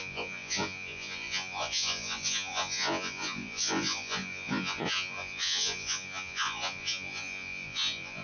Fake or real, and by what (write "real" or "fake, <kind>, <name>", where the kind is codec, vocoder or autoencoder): fake, vocoder, Vocos